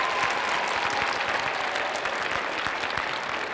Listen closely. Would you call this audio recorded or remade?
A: recorded